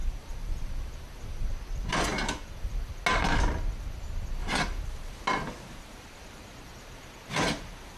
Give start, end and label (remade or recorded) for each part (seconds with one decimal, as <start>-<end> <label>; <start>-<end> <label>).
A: 0.0-1.5 remade; 1.5-2.1 recorded; 2.1-2.6 remade; 2.6-4.4 recorded; 4.4-5.2 remade; 5.2-8.0 recorded